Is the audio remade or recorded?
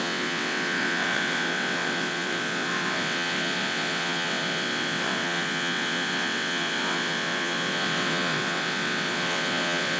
remade